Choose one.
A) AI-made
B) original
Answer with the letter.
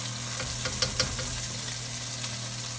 B